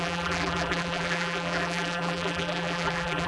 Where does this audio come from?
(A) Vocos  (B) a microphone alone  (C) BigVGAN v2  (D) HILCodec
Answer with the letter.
C